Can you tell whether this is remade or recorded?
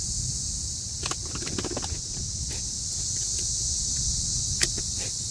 recorded